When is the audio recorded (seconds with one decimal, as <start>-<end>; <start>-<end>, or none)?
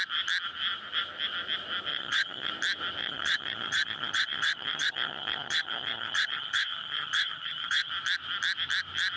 0.0-1.9; 2.5-3.0; 7.9-9.2